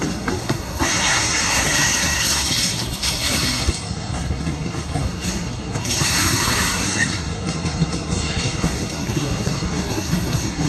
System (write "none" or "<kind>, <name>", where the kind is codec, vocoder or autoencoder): codec, SNAC